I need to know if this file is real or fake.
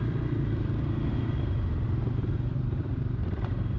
fake